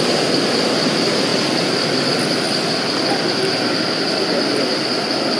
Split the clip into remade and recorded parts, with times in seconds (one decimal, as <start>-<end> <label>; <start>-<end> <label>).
0.0-5.4 recorded